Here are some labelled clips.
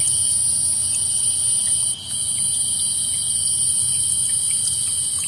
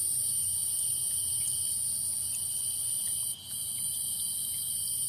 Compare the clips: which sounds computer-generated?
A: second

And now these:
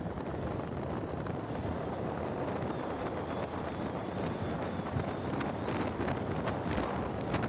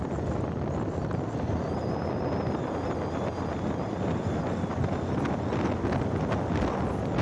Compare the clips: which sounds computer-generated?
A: first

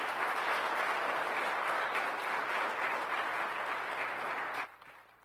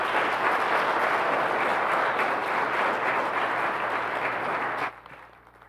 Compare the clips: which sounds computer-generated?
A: second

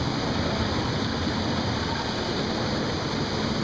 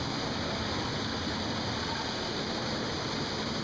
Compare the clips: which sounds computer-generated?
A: first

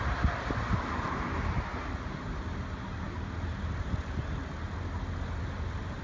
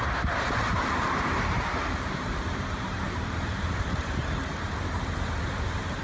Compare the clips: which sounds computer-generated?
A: second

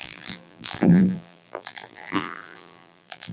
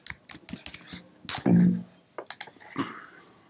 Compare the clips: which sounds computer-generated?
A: first